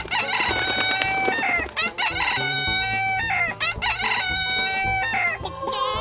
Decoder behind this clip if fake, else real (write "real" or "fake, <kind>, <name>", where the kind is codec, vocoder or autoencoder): real